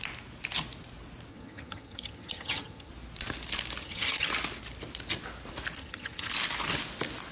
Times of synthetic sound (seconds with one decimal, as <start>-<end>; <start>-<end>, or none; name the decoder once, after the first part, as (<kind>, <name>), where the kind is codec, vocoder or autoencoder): 1.3-2.9 (vocoder, HiFi-GAN); 3.8-4.3; 5.8-6.3